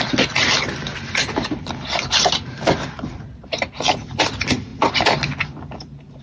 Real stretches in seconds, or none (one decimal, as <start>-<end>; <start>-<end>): 0.0-6.2